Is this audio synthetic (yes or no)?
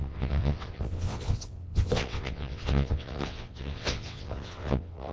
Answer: yes